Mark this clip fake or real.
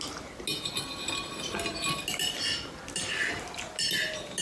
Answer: real